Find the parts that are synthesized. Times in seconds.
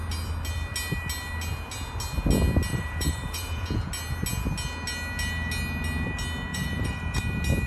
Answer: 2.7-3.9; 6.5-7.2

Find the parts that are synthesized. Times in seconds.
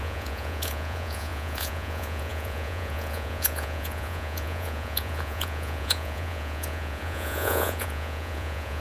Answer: 0.0-8.8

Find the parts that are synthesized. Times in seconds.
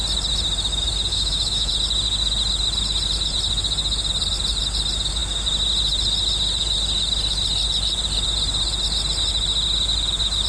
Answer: 1.1-1.7